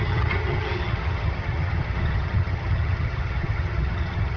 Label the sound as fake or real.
fake